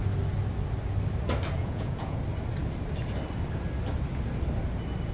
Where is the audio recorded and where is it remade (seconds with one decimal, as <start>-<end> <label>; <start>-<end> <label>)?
0.0-1.6 recorded; 1.6-2.2 remade; 2.2-5.1 recorded